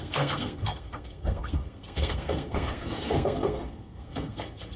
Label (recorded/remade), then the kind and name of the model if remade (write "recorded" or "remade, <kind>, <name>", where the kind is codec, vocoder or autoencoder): remade, codec, SNAC